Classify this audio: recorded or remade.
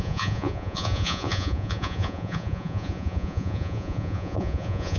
remade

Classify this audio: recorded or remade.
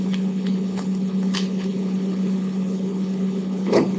remade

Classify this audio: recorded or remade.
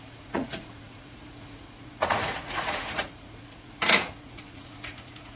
remade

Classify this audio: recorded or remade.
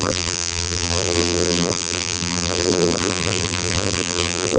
remade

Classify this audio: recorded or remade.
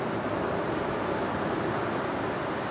recorded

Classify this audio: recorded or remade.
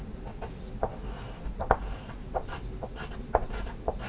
recorded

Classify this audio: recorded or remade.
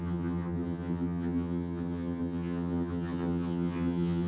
remade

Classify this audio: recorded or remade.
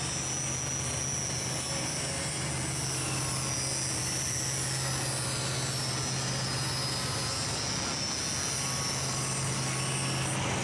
recorded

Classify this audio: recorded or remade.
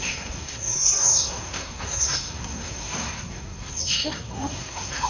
remade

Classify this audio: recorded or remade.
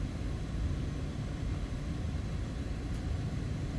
recorded